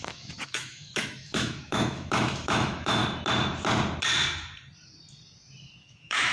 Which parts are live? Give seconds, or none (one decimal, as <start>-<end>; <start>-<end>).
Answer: 3.0-5.8